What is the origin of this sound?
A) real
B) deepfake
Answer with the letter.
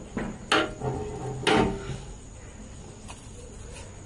A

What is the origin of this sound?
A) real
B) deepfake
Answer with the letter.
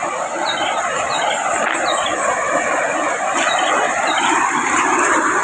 B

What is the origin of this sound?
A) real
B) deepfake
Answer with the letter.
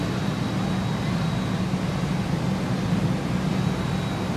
A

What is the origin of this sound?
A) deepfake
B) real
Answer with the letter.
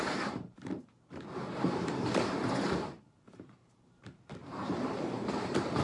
A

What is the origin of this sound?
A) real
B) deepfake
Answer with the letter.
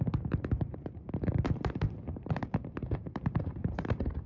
B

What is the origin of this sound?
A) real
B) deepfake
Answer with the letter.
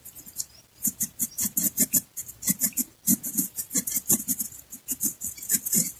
A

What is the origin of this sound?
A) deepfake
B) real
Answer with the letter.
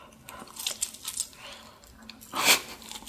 B